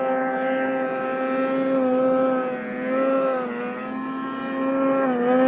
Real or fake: real